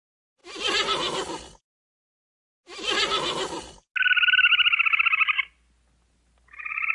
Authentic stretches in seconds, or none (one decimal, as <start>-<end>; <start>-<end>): 0.0-6.9

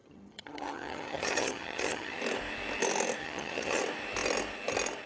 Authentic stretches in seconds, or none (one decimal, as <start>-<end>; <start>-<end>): 2.2-3.2; 3.8-5.1

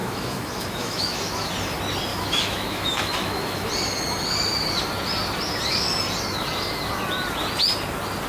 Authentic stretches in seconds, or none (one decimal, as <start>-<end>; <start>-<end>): 1.5-2.1; 3.7-8.3

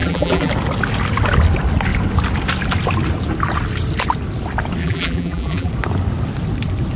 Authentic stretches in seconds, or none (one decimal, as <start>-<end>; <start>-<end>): 0.5-4.8; 5.7-7.0

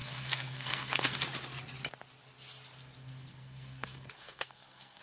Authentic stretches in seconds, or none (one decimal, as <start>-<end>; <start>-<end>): 1.2-3.0